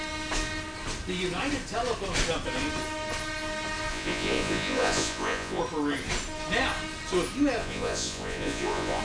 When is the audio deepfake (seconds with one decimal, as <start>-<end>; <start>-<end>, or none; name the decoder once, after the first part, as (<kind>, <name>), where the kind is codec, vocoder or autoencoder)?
3.9-5.6 (vocoder, Vocos); 7.6-9.0